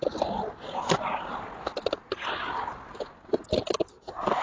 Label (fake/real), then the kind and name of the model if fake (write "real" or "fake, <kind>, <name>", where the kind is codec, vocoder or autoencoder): real